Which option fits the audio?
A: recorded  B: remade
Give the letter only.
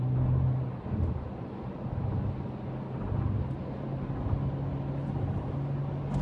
A